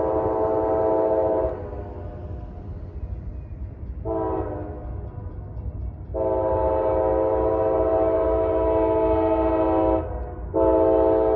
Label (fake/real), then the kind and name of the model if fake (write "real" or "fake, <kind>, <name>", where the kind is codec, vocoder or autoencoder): real